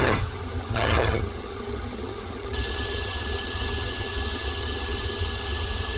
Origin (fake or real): fake